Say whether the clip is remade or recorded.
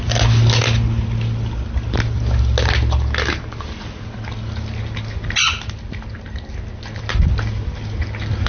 recorded